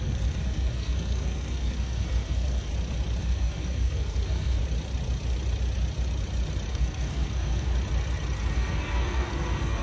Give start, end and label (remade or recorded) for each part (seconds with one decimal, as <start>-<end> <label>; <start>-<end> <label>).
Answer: 0.0-2.7 remade; 2.7-3.2 recorded; 3.2-4.6 remade; 4.6-6.7 recorded; 6.7-7.7 remade; 7.7-8.5 recorded; 8.5-9.8 remade